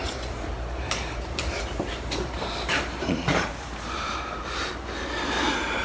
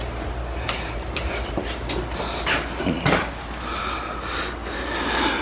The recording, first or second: second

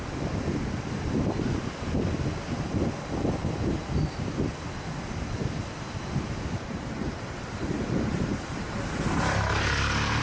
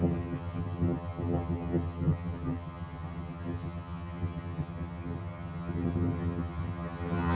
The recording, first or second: first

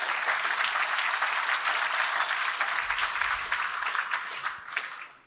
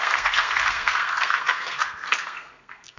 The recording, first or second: first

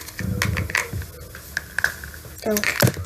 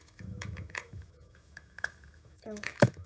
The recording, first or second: first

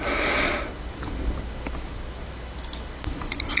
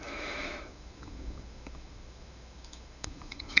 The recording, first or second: first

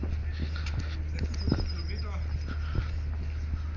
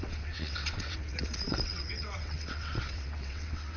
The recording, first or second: first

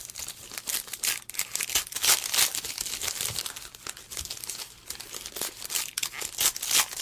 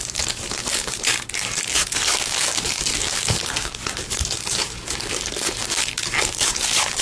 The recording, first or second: first